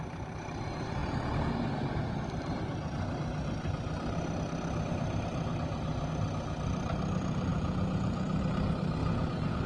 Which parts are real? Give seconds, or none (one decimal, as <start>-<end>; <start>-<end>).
0.0-7.5; 8.4-9.0